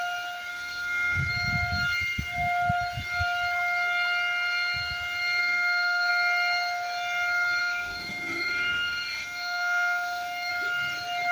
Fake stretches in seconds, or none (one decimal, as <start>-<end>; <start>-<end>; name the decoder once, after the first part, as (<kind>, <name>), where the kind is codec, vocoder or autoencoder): 0.5-1.3 (autoencoder, DAC-VAE); 5.4-6.1; 7.6-10.5